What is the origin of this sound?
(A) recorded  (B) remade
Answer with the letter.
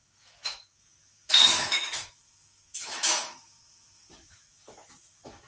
B